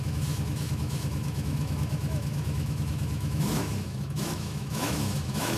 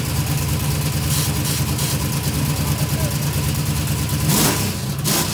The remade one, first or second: first